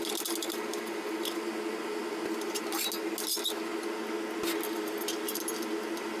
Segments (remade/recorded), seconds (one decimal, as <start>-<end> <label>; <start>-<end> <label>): 0.0-6.2 recorded